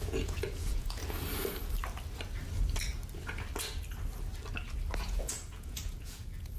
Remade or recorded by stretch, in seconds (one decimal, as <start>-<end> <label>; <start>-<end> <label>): 0.0-1.0 remade; 1.0-5.0 recorded; 5.0-6.6 remade